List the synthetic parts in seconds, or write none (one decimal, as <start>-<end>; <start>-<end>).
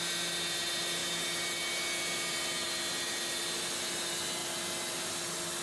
none